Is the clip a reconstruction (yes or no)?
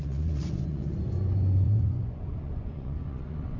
yes